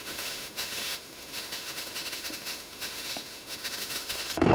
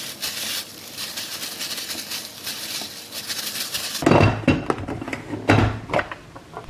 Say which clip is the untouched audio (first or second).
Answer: second